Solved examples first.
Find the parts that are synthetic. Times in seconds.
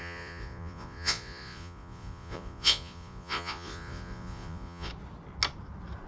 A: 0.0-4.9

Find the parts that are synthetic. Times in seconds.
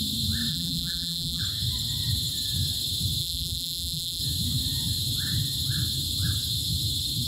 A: 0.5-1.4; 3.2-4.2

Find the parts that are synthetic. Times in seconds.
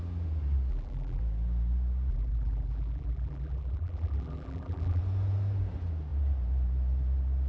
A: 0.7-1.2; 2.1-5.0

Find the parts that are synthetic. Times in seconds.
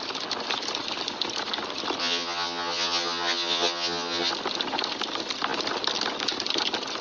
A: 2.0-4.3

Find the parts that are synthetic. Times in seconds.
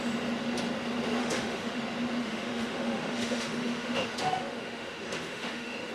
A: 1.2-1.8; 2.2-5.9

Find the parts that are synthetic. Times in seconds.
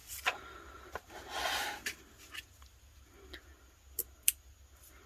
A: none